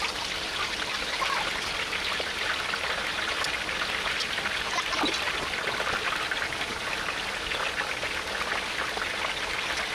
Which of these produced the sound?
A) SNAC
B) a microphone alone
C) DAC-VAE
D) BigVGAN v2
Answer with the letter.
B